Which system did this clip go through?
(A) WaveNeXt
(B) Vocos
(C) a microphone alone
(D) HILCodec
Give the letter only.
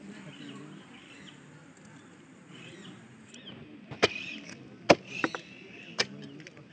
C